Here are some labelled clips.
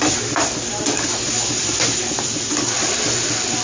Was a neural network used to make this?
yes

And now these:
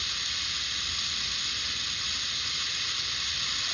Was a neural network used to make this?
no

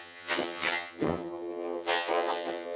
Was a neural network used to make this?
yes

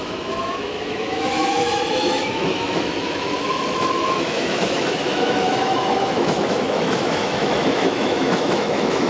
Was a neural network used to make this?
yes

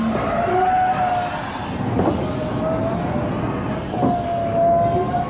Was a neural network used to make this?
no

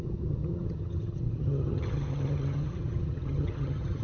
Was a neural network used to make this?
yes